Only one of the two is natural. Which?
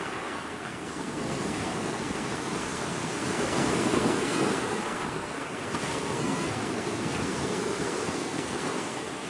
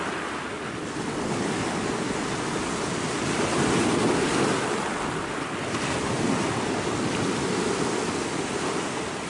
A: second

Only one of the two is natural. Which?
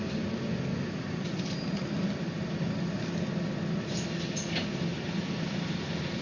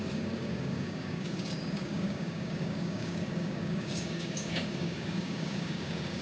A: first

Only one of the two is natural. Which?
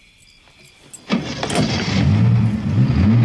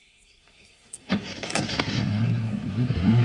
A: first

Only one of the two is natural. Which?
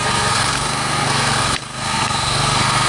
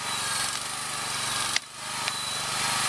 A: second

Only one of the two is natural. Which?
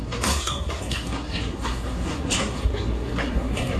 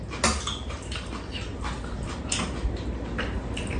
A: second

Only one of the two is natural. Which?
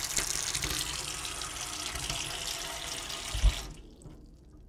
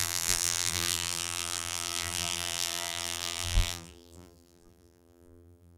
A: first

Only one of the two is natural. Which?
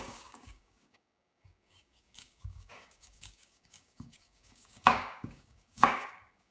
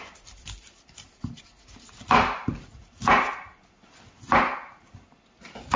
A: second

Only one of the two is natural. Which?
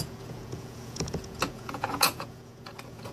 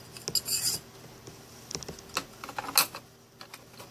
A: second